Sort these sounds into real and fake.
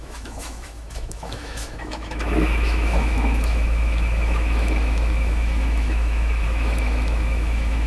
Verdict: fake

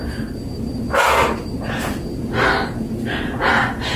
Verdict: real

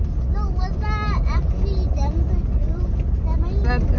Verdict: real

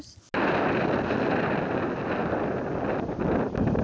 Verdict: real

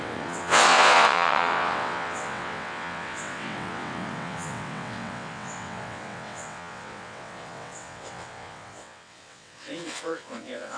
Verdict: fake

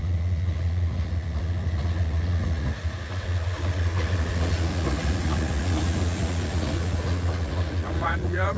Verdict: fake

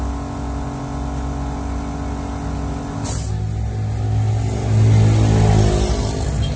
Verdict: real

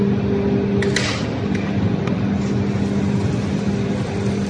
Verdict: real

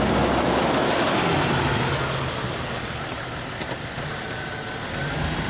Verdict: real